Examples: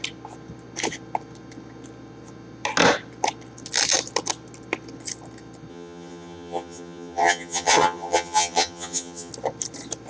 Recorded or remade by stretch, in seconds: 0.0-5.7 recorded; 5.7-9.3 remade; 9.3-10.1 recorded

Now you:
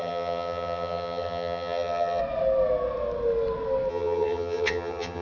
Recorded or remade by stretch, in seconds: 0.0-2.2 remade; 2.2-3.9 recorded; 3.9-5.2 remade